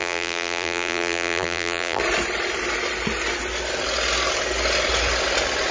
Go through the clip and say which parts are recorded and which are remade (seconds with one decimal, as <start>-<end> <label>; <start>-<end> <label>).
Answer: 0.0-2.0 remade; 2.0-5.7 recorded